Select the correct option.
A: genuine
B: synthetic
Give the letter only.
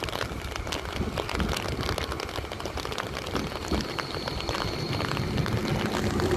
A